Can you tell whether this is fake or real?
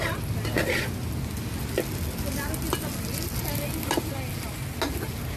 real